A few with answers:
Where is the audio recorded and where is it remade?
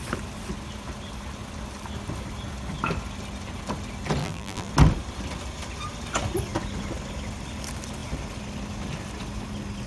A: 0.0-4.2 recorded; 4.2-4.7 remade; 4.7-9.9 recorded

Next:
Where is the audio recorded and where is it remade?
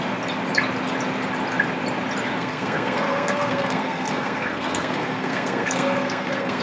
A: 0.0-2.4 recorded; 2.4-6.6 remade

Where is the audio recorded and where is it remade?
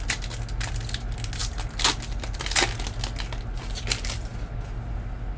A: 0.0-5.4 recorded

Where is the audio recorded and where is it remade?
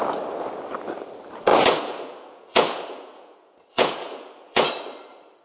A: 0.0-1.5 recorded; 1.5-4.7 remade; 4.7-5.4 recorded